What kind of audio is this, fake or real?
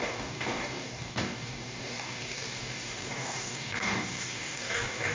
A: fake